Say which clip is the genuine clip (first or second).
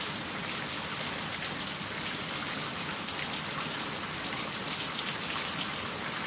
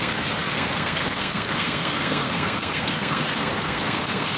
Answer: first